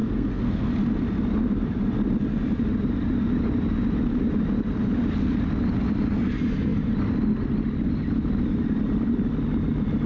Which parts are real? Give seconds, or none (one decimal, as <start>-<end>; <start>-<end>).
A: 0.7-10.1